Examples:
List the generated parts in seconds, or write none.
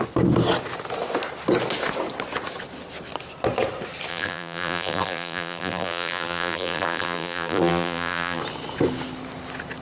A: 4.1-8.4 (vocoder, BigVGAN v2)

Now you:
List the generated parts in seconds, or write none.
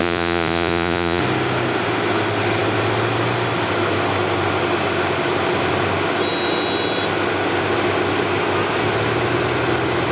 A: 0.0-1.2 (vocoder, Vocos)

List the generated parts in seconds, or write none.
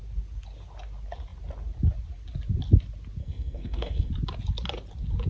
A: 3.2-4.1 (codec, SNAC)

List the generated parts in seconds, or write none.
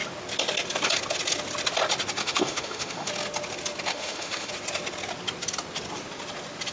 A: 2.2-3.1 (autoencoder, DAC-VAE); 3.9-4.5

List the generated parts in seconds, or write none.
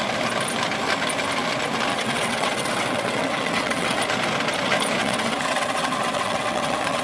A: 1.9-4.0 (vocoder, WaveNeXt); 5.0-7.0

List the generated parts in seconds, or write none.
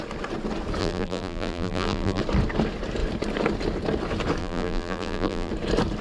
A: 0.8-2.2 (vocoder, BigVGAN v2); 4.4-5.5